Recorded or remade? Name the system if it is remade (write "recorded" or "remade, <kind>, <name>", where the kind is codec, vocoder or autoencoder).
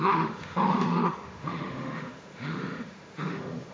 remade, autoencoder, DAC-VAE